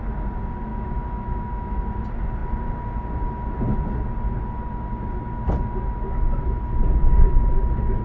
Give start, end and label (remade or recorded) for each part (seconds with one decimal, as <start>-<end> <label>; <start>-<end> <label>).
0.0-0.7 recorded; 0.7-2.0 remade; 2.0-8.0 recorded